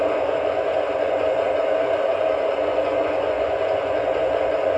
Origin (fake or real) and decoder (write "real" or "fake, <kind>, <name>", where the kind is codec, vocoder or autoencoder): fake, vocoder, Vocos